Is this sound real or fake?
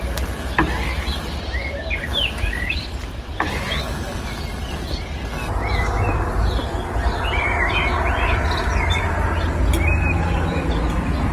real